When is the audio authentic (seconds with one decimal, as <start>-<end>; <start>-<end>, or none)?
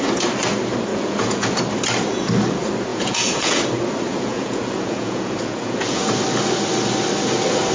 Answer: 0.0-0.9; 1.6-2.9; 3.6-4.1; 6.0-7.7